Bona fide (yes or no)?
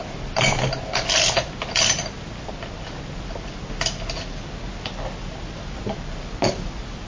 yes